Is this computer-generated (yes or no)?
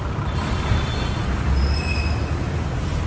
no